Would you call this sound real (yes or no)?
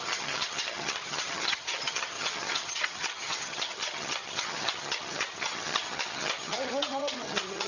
no